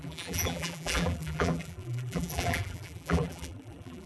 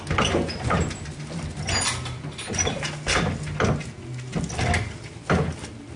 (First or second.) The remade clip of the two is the first